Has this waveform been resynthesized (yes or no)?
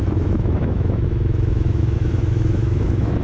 yes